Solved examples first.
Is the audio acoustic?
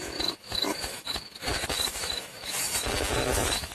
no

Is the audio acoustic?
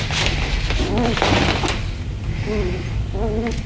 yes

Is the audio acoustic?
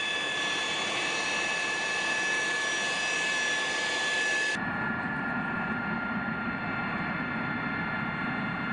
yes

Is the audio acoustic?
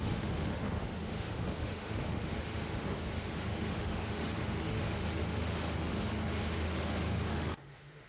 no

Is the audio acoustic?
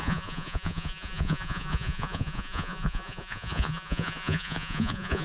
no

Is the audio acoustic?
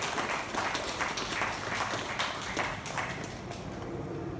yes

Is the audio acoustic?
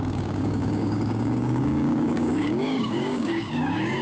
no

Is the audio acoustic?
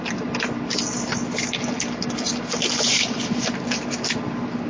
yes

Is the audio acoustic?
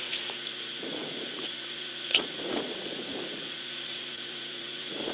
no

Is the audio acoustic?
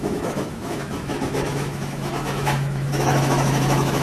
no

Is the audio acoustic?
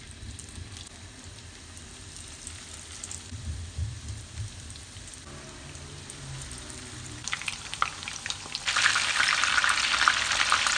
no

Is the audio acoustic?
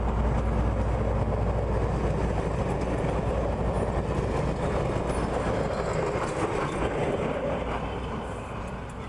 yes